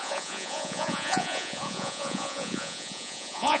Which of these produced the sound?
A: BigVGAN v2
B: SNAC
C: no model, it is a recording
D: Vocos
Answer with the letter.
D